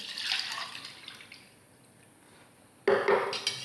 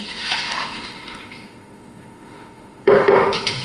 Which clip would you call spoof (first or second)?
second